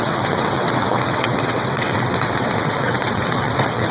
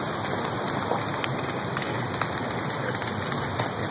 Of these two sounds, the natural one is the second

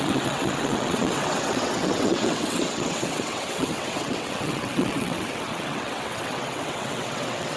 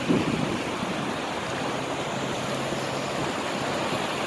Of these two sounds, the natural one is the second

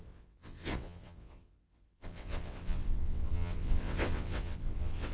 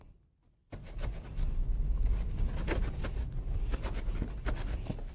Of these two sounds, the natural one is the second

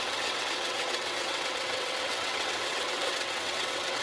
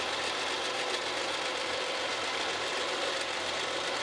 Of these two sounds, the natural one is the second